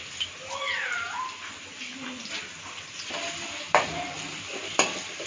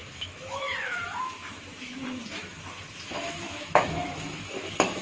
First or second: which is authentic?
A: first